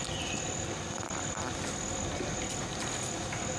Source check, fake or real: real